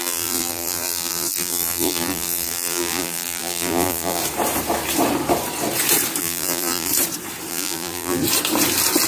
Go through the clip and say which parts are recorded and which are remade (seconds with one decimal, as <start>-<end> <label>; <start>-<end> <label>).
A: 0.0-4.2 remade; 4.2-6.2 recorded; 6.2-6.9 remade; 6.9-7.5 recorded; 7.5-8.2 remade; 8.2-9.1 recorded